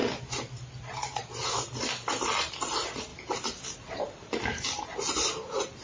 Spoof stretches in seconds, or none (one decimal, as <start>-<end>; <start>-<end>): 1.7-5.8

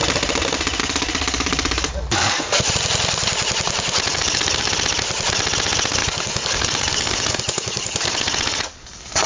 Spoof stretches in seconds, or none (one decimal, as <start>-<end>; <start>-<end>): 0.8-2.7; 4.1-4.7; 6.0-9.3

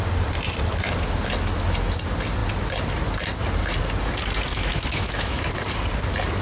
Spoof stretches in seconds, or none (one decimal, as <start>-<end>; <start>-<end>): 4.5-5.5